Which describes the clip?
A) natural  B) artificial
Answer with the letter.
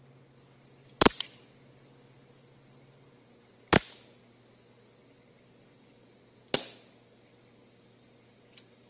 A